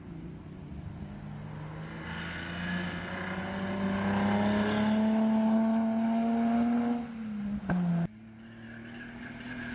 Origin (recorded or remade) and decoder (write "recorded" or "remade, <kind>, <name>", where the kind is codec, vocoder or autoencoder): recorded